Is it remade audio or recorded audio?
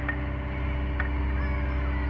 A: recorded